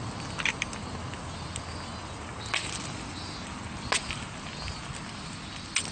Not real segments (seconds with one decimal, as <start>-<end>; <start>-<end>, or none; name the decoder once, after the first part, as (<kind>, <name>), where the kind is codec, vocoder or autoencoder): none